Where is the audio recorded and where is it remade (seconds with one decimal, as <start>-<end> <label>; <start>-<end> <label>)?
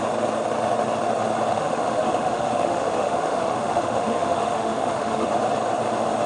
0.0-1.5 recorded; 1.5-5.3 remade; 5.3-6.3 recorded